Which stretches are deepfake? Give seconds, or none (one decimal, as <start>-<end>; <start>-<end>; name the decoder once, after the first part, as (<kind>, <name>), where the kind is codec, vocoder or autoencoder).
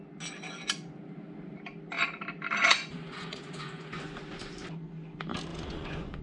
2.6-4.2 (vocoder, Vocos); 5.5-6.2